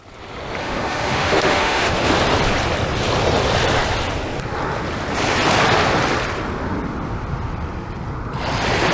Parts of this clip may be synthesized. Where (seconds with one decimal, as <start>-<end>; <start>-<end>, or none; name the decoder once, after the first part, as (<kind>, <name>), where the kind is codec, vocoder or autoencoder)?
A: 0.6-2.1 (autoencoder, DAC-VAE)